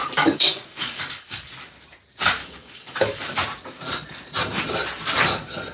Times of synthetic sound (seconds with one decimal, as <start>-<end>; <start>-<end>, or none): 0.0-1.5; 2.4-3.2